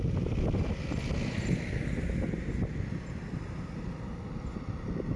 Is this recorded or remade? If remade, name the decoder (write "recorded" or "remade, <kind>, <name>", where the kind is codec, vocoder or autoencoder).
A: recorded